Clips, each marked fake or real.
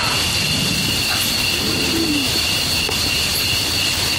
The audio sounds real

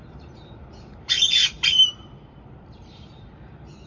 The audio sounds fake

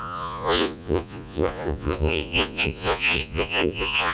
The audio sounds fake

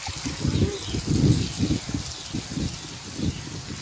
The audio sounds real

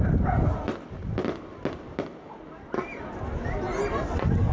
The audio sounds real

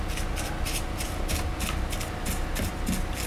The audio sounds real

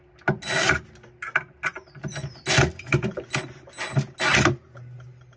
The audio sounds real